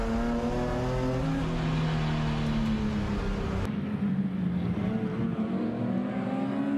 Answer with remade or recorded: recorded